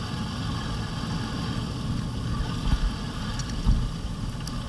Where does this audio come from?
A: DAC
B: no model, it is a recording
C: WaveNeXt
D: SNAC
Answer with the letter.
B